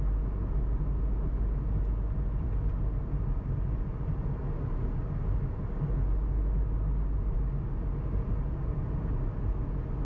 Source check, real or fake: real